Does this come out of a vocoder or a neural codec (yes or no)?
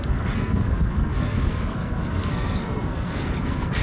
yes